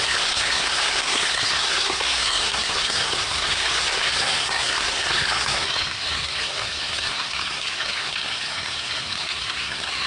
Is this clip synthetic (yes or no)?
yes